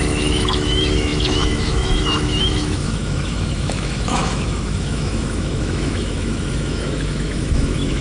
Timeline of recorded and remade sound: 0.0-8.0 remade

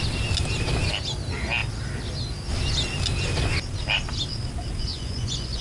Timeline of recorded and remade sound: 0.0-4.9 recorded; 4.9-5.6 remade

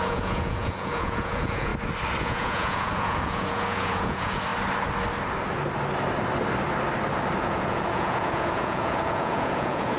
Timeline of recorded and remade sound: 0.0-1.7 remade; 1.7-2.2 recorded; 2.2-4.5 remade; 4.5-7.4 recorded; 7.4-10.0 remade

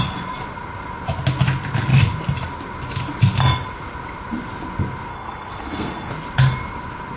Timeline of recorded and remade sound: 0.0-5.1 recorded; 5.1-6.1 remade; 6.1-7.2 recorded